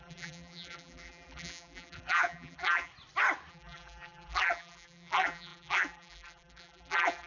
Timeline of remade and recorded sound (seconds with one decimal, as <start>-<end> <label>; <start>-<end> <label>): 0.0-2.9 remade; 2.9-3.5 recorded; 3.5-7.3 remade